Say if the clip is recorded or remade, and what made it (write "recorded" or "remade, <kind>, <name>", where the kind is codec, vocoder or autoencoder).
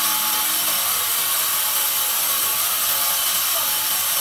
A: recorded